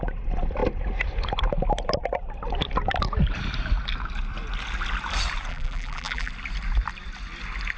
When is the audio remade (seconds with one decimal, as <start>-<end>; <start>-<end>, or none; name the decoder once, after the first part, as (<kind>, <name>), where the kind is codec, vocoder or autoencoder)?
5.5-6.3 (vocoder, BigVGAN v2)